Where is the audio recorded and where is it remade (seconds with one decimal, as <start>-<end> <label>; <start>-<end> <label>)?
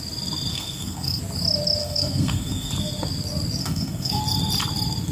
0.0-0.5 recorded; 0.5-1.2 remade; 1.2-1.8 recorded; 1.8-2.7 remade; 2.7-3.6 recorded; 3.6-4.2 remade; 4.2-5.1 recorded